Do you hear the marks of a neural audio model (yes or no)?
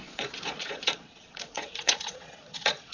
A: yes